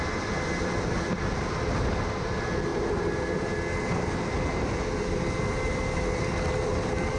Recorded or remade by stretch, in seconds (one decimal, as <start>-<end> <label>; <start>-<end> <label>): 0.0-7.2 recorded